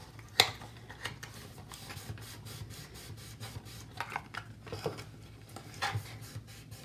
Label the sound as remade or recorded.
recorded